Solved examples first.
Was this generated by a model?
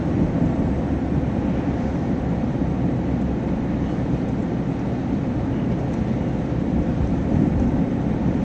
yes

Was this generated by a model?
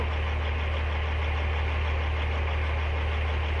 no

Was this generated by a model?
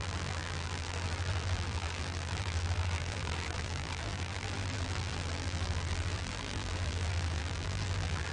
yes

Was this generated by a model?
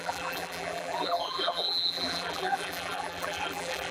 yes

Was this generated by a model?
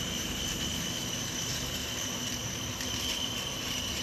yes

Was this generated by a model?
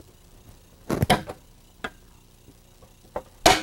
no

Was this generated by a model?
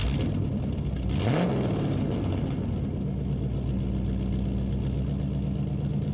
no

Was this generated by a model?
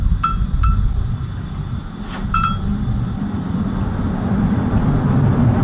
yes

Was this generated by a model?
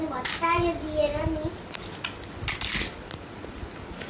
no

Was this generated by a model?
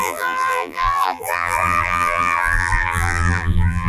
yes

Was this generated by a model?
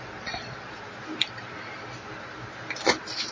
no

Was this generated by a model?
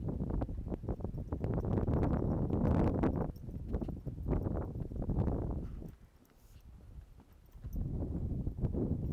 no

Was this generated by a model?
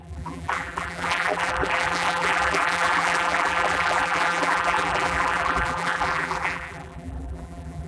yes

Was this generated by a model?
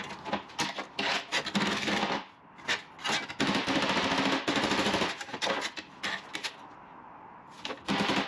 no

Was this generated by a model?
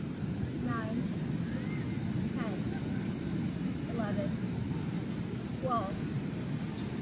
no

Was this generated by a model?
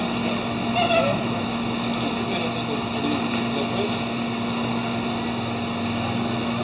no